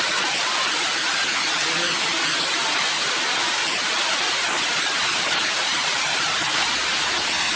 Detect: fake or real real